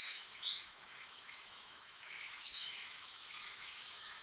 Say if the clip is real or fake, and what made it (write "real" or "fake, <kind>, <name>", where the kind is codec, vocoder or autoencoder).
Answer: fake, autoencoder, DAC-VAE